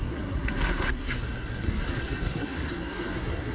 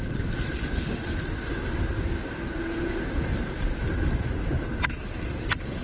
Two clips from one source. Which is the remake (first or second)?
first